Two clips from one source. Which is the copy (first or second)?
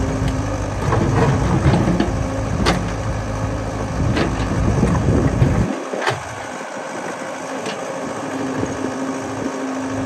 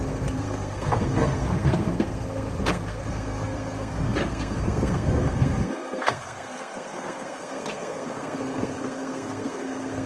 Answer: second